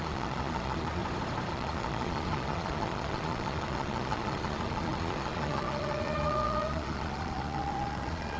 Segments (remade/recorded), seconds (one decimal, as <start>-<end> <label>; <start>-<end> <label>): 0.0-1.0 remade; 1.0-1.5 recorded; 1.5-8.4 remade